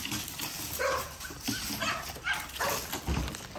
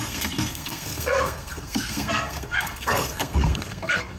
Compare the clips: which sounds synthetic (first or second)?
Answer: second